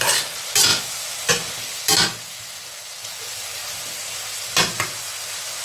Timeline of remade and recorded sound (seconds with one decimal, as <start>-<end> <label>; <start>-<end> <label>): 0.0-5.6 recorded